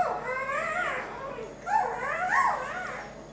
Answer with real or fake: real